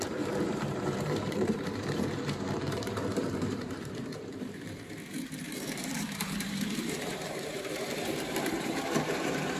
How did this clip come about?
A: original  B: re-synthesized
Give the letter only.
B